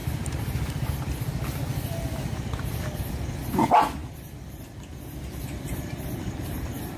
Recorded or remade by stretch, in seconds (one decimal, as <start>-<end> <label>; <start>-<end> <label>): 0.0-0.9 remade; 0.9-1.7 recorded; 1.7-3.0 remade; 3.0-4.0 recorded; 4.0-7.0 remade